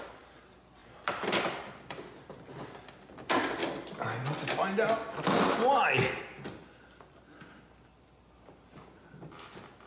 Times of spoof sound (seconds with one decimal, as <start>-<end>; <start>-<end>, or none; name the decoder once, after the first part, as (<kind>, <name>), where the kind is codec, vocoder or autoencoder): 0.8-3.1 (vocoder, BigVGAN v2)